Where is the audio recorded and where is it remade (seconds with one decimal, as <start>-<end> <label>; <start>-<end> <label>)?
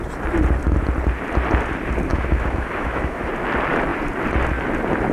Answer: 0.0-2.1 recorded; 2.1-3.3 remade; 3.3-5.1 recorded